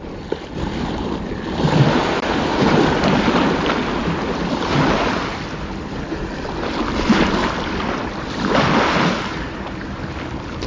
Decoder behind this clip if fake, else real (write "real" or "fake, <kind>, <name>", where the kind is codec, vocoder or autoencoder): real